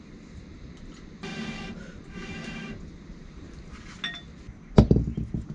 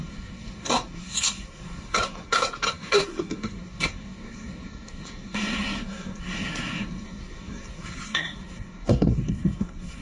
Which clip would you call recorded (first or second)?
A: first